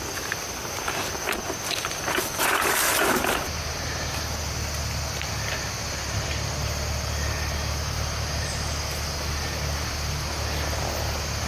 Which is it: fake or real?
real